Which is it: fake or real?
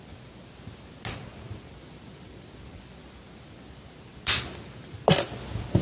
real